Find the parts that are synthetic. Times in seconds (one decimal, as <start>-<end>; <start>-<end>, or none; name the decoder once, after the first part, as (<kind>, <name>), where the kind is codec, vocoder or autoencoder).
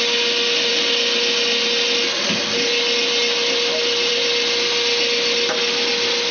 none